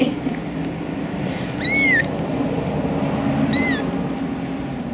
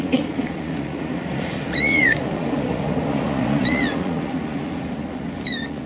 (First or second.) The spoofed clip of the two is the second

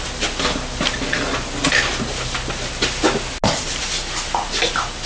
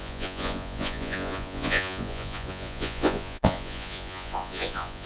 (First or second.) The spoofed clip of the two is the second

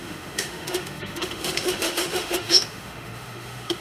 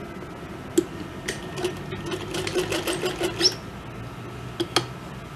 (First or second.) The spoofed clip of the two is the first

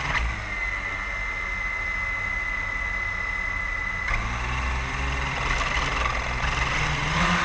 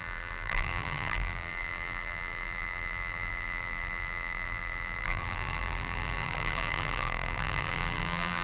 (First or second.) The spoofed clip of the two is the second